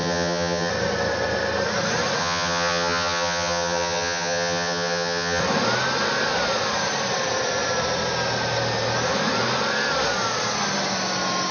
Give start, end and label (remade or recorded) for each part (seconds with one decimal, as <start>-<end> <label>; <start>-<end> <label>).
0.0-0.7 remade; 0.7-2.2 recorded; 2.2-5.4 remade; 5.4-11.5 recorded